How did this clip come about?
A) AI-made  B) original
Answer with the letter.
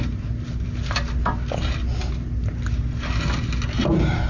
B